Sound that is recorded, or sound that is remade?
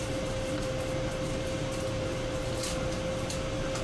recorded